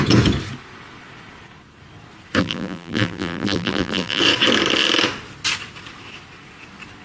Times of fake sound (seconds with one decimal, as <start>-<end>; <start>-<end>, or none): 2.4-4.2